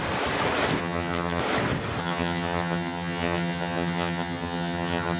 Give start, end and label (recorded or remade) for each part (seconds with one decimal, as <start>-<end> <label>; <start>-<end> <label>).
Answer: 0.0-0.8 recorded; 0.8-1.4 remade; 1.4-2.0 recorded; 2.0-5.2 remade